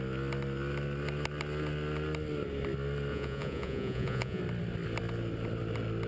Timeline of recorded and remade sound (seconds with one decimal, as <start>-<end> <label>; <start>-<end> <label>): 0.0-3.1 recorded; 3.1-4.4 remade; 4.4-6.1 recorded